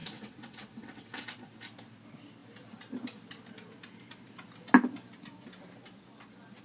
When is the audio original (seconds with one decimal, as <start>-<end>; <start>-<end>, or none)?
1.2-6.6